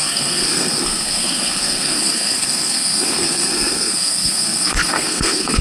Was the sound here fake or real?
fake